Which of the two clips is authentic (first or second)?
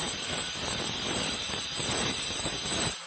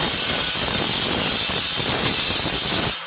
second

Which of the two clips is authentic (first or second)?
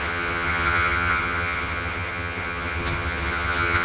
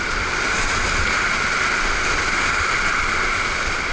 second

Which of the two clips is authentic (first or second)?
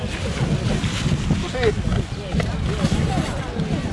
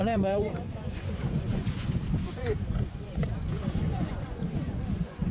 first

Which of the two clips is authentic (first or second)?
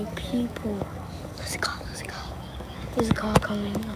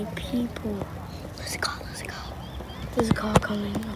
second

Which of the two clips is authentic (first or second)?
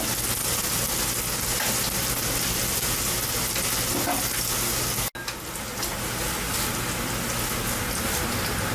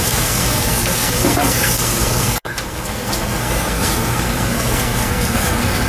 first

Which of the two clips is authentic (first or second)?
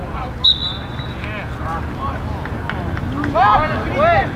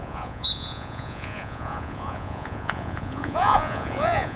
first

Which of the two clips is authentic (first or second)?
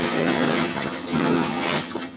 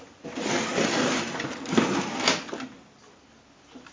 second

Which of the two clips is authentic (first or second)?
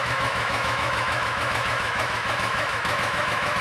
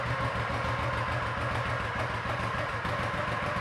second